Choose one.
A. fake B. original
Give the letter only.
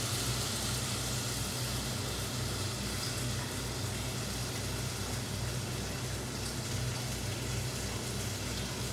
B